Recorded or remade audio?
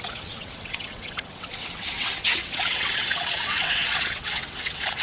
remade